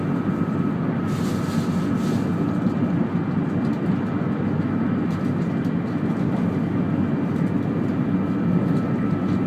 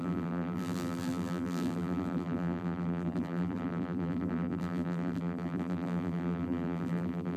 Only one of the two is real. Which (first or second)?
first